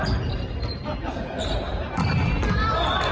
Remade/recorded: recorded